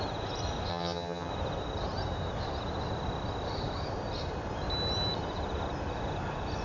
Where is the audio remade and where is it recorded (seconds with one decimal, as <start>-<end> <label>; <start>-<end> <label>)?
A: 0.0-0.7 recorded; 0.7-1.3 remade; 1.3-6.6 recorded

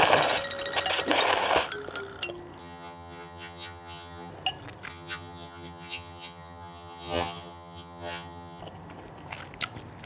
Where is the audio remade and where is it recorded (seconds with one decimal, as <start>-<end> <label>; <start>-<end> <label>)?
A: 0.0-2.6 recorded; 2.6-4.3 remade; 4.3-4.9 recorded; 4.9-8.6 remade; 8.6-10.1 recorded

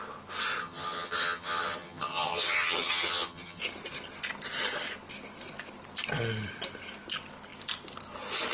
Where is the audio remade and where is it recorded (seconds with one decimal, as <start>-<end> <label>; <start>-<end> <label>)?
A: 0.0-0.6 recorded; 0.6-3.6 remade; 3.6-8.5 recorded

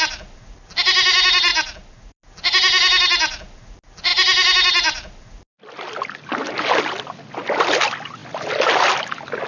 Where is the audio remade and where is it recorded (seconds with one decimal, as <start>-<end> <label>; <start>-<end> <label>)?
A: 0.0-9.5 recorded

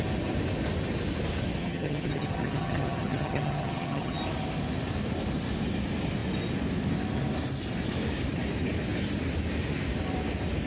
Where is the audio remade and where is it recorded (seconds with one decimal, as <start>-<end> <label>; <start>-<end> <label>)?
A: 0.0-1.6 recorded; 1.6-4.2 remade; 4.2-10.7 recorded